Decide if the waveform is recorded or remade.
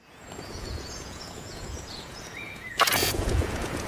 remade